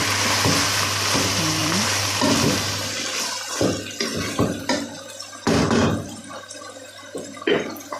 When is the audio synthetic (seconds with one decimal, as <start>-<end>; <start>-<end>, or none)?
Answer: 1.6-2.5; 4.1-5.1; 5.8-6.6